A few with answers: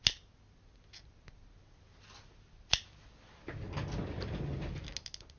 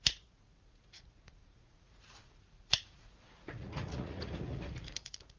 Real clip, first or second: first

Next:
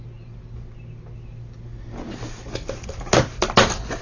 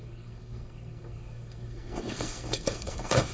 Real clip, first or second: first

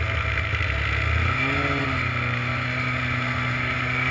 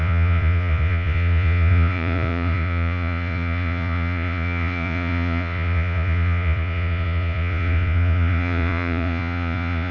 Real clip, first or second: first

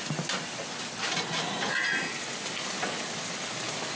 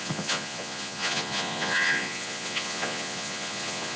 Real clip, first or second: first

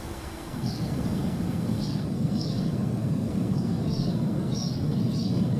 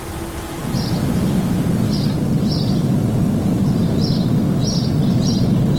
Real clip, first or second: second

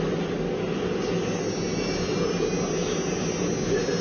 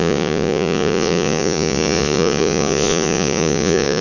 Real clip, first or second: first